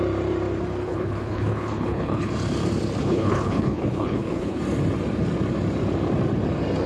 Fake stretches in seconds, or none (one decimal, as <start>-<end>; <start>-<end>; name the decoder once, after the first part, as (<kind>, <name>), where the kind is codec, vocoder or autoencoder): 0.8-2.3 (codec, HILCodec); 3.0-4.6